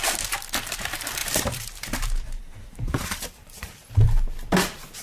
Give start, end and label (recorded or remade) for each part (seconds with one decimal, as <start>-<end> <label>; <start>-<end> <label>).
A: 0.0-1.2 recorded; 1.2-4.2 remade; 4.2-5.0 recorded